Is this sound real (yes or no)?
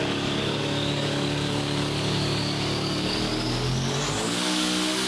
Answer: no